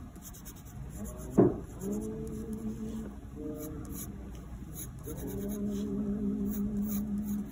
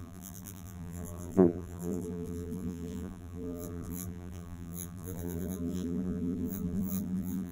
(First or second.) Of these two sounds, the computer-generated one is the second